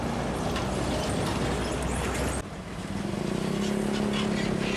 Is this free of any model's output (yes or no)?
yes